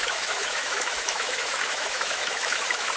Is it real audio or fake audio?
fake